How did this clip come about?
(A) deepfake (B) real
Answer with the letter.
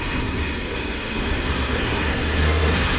A